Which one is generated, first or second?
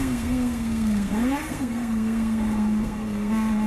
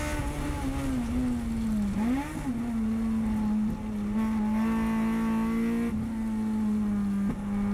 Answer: first